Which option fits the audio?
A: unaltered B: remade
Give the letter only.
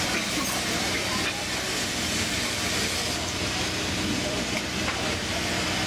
A